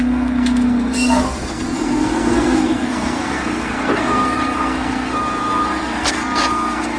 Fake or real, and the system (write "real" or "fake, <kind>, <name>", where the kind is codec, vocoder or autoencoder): fake, codec, SNAC